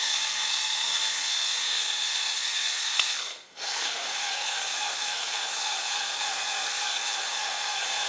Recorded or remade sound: remade